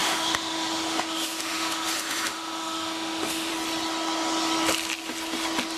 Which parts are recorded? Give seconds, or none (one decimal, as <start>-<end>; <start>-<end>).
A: 3.5-5.8